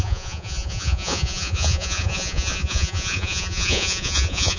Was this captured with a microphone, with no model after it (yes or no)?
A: no